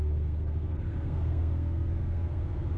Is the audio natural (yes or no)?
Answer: no